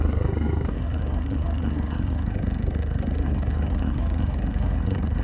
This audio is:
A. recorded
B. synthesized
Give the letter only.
B